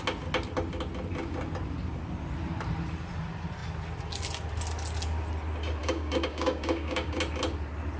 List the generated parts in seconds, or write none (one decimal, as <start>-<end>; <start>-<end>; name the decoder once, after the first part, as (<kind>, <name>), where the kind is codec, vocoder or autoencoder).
5.8-7.2 (codec, DAC)